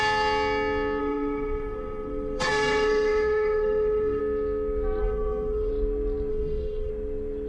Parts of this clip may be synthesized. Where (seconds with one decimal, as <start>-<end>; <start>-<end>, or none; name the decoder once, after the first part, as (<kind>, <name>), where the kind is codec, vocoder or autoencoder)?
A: 1.0-4.2 (codec, SNAC); 5.0-5.7; 6.3-6.9